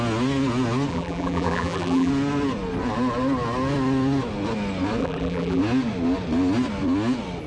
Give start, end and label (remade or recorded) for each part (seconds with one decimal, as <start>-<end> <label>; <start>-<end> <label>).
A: 0.0-0.9 recorded; 0.9-2.1 remade; 2.1-5.0 recorded; 5.0-5.6 remade; 5.6-7.5 recorded